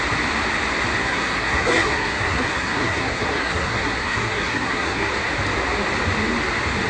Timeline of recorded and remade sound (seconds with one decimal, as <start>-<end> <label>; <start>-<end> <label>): 0.0-1.0 recorded; 1.0-5.1 remade; 5.1-6.9 recorded